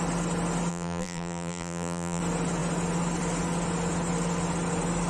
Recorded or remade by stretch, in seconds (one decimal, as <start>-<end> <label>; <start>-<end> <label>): 0.0-0.7 recorded; 0.7-2.2 remade; 2.2-5.1 recorded